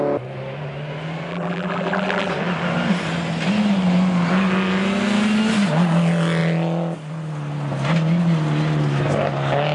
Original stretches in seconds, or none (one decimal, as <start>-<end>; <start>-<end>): 0.0-1.3; 2.3-9.7